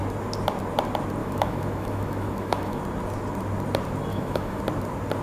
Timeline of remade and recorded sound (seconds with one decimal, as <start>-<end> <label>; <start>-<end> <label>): 0.0-1.2 recorded; 1.2-2.8 remade; 2.8-4.1 recorded; 4.1-4.6 remade; 4.6-5.2 recorded